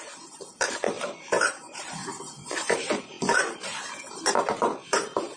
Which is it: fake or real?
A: fake